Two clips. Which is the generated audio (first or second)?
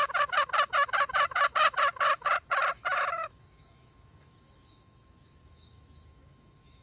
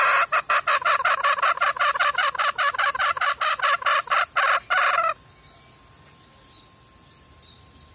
first